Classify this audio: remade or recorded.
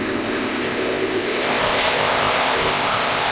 remade